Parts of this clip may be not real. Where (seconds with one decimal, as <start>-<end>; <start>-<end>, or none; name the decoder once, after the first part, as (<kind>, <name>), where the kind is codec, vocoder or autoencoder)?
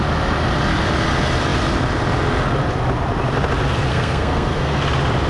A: 3.9-4.8 (codec, SNAC)